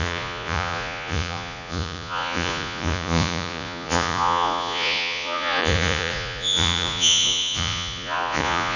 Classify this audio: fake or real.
fake